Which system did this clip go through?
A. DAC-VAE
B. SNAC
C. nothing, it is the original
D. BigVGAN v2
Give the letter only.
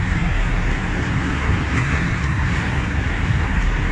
B